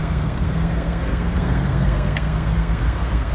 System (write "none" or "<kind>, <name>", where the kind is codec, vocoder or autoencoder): codec, SNAC